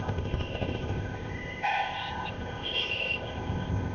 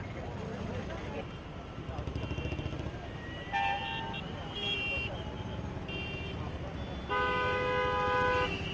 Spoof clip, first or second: first